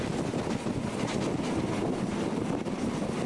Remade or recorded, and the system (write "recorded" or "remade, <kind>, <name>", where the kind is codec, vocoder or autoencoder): recorded